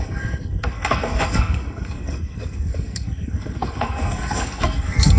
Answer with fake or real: fake